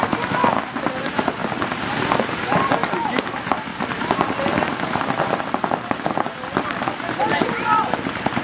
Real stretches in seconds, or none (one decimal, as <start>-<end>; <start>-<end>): 0.0-8.4